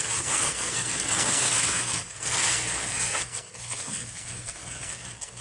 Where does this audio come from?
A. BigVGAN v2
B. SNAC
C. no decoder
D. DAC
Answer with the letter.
B